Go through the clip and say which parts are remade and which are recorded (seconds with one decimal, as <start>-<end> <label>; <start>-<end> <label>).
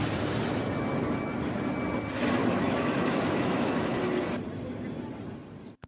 0.0-2.4 recorded; 2.4-4.0 remade; 4.0-5.9 recorded